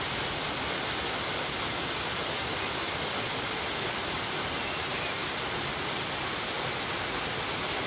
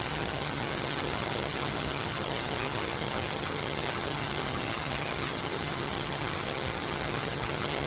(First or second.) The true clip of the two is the first